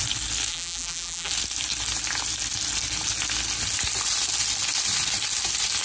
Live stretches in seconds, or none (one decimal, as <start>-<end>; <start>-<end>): 0.0-0.5; 1.3-5.8